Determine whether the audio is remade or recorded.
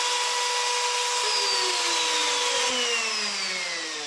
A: recorded